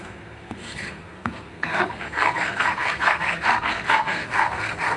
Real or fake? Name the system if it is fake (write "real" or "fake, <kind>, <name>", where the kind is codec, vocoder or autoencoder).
fake, codec, SNAC